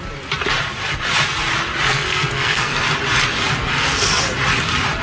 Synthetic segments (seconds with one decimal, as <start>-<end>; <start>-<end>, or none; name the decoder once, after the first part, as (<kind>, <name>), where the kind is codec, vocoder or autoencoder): 1.9-2.9 (codec, SNAC); 3.6-4.2